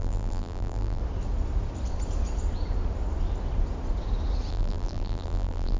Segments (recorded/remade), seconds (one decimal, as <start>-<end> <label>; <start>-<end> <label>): 0.0-1.0 remade; 1.0-4.5 recorded; 4.5-5.8 remade